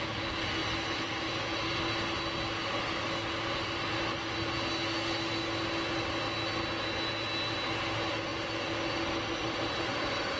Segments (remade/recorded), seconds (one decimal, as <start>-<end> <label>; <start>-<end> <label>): 0.0-10.4 recorded